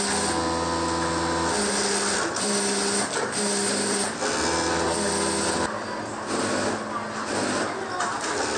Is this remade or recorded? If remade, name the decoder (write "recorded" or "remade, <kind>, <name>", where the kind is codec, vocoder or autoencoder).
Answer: recorded